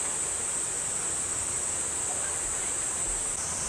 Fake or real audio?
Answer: real